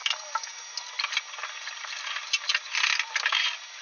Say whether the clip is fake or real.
real